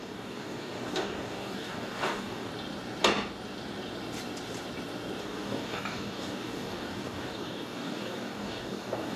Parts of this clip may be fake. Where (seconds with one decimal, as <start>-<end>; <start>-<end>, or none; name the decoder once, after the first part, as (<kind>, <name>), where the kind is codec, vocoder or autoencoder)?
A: 0.0-2.5 (codec, DAC); 5.2-9.2